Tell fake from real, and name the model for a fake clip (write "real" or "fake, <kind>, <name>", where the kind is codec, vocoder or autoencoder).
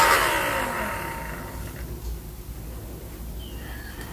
real